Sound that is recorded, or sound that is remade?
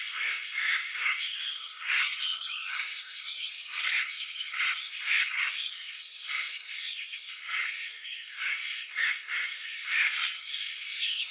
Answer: remade